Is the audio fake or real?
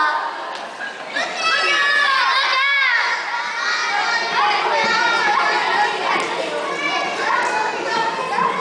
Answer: real